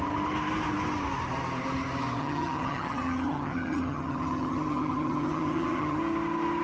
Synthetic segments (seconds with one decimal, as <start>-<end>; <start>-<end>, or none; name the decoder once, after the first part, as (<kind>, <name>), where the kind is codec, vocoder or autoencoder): 2.2-6.0 (vocoder, HiFi-GAN)